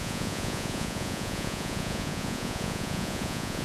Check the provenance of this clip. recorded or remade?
remade